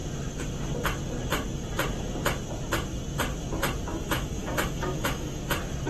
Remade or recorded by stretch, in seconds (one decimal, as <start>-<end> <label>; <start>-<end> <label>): 0.0-3.9 recorded; 3.9-5.4 remade; 5.4-5.9 recorded

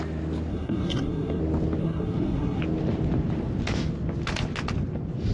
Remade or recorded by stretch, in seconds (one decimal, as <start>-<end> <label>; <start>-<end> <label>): 0.0-0.5 recorded; 0.5-1.4 remade; 1.4-1.8 recorded; 1.8-2.6 remade; 2.6-5.3 recorded

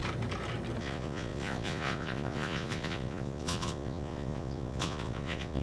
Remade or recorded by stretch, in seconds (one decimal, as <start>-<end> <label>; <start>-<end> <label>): 0.0-0.8 recorded; 0.8-5.6 remade

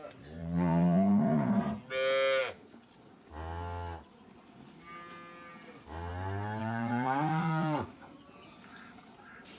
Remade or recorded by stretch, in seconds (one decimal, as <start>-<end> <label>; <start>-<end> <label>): 0.0-0.4 recorded; 0.4-1.5 remade; 1.5-6.6 recorded; 6.6-8.2 remade; 8.2-9.6 recorded

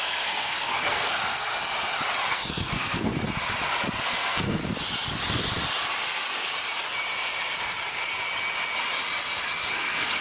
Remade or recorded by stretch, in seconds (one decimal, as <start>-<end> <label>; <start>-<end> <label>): 0.0-1.5 remade; 1.5-2.3 recorded; 2.3-3.1 remade; 3.1-4.0 recorded; 4.0-4.6 remade; 4.6-9.7 recorded; 9.7-10.2 remade

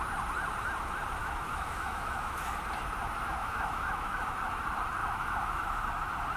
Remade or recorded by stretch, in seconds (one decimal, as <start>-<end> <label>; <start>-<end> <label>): 0.0-1.2 recorded; 1.2-2.6 remade; 2.6-3.4 recorded; 3.4-4.4 remade; 4.4-5.0 recorded; 5.0-5.9 remade; 5.9-6.4 recorded

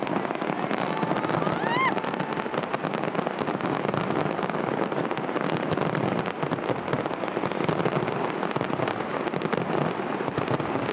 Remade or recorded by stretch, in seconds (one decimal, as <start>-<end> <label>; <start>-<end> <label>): 0.0-10.9 recorded